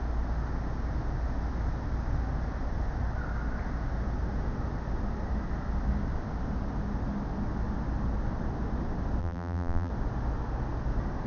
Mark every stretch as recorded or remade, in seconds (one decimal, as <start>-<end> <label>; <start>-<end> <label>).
0.0-9.2 recorded; 9.2-9.9 remade; 9.9-11.3 recorded